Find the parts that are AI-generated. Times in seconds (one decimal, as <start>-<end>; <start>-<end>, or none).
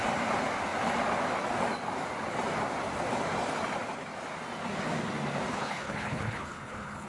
5.5-7.1